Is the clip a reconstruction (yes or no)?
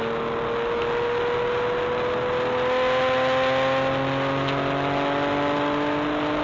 no